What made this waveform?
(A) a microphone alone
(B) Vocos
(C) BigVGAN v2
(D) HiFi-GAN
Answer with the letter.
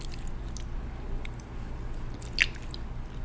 A